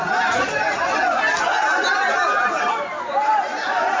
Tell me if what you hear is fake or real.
real